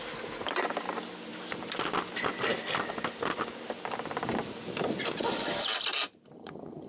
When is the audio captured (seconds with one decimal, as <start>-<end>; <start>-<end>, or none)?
0.0-6.4